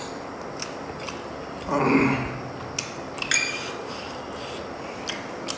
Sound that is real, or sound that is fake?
real